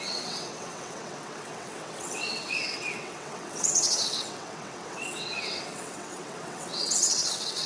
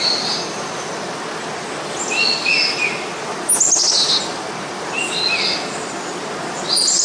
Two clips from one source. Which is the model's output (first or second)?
first